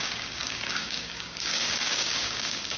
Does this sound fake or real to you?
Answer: fake